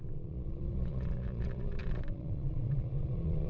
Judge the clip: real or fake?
fake